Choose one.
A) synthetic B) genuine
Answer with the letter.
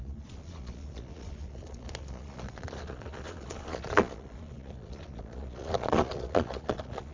A